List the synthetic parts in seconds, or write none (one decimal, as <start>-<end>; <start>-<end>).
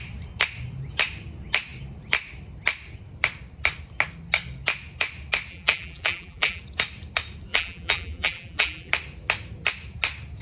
5.5-6.6; 7.5-8.9